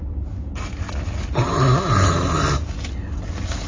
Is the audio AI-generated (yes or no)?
no